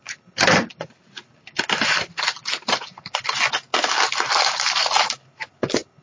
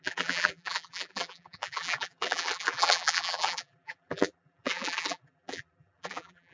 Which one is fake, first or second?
second